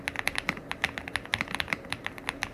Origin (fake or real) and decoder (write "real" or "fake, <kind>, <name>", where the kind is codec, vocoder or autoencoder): real